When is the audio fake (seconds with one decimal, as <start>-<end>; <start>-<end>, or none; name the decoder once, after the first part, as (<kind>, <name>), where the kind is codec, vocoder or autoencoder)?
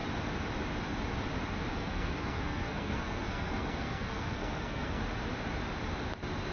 1.7-5.0 (codec, SNAC)